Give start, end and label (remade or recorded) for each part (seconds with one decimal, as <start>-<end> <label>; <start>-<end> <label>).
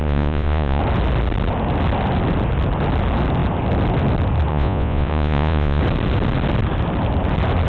0.0-0.8 remade; 0.8-4.5 recorded; 4.5-5.8 remade; 5.8-7.7 recorded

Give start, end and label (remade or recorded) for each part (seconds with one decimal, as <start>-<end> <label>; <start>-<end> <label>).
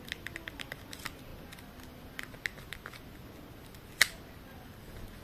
0.0-5.2 recorded